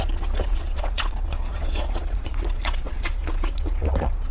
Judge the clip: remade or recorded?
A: remade